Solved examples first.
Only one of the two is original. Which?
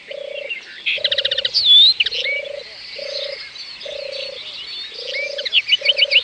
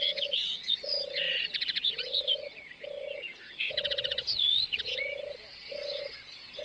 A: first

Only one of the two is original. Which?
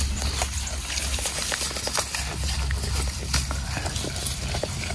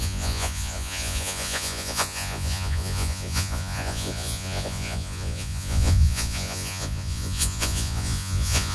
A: first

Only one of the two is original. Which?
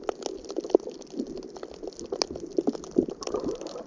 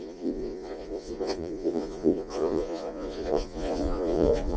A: first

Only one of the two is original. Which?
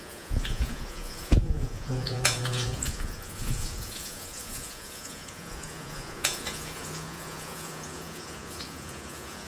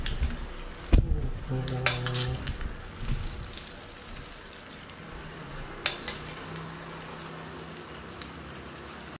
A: second